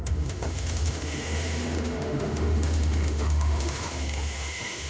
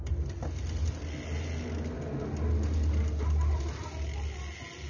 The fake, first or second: first